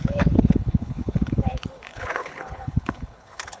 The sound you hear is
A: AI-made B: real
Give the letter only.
A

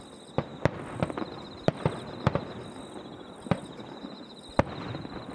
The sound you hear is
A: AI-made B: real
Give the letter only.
B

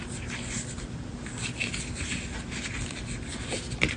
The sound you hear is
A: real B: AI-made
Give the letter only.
A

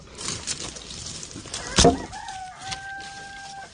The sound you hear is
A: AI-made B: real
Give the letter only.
B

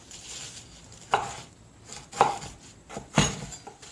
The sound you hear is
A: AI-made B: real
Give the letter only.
B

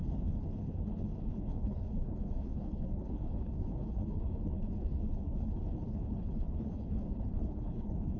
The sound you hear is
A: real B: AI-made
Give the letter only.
B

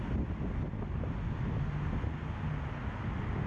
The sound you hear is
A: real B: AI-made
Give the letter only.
A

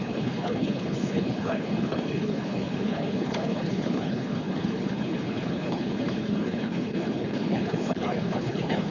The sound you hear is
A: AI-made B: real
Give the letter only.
A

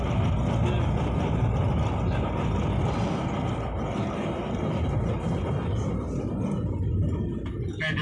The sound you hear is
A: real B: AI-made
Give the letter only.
A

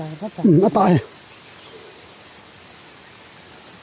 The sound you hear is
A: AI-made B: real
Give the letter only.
B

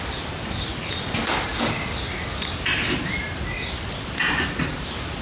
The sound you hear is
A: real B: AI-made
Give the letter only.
A